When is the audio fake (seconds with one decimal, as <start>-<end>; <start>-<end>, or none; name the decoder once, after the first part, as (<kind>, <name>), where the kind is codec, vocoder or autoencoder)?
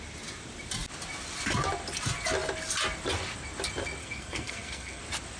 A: 4.0-5.0 (codec, SNAC)